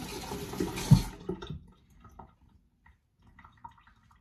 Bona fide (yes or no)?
yes